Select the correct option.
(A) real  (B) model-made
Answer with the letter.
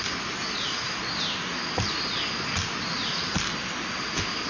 A